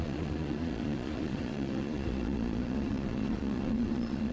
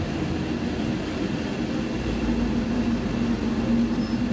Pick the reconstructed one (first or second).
first